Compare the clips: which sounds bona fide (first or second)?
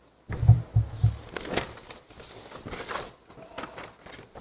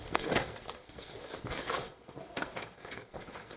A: first